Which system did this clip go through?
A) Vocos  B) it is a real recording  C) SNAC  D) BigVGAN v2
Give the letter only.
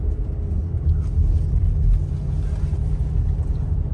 B